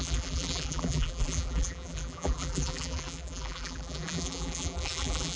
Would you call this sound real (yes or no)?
no